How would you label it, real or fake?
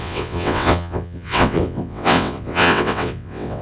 fake